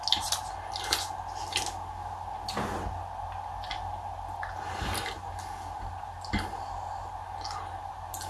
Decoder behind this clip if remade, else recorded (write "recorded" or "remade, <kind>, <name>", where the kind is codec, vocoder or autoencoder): recorded